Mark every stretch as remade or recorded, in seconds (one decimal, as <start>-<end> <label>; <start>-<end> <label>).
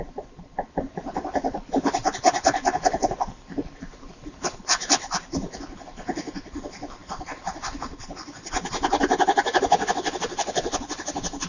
0.0-11.5 recorded